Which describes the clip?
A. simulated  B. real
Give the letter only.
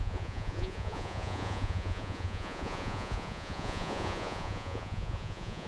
A